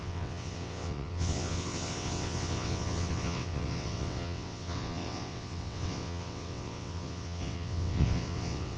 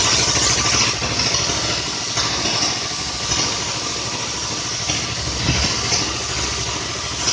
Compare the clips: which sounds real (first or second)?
second